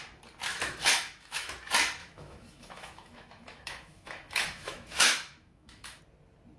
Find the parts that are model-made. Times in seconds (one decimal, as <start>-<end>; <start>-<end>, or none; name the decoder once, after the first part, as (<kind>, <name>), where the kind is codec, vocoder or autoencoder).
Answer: 0.5-1.5 (autoencoder, DAC-VAE); 2.0-6.0